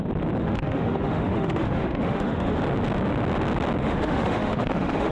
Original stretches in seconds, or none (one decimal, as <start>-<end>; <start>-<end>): 0.0-0.4; 2.6-3.8